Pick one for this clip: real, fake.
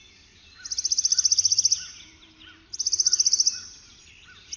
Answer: real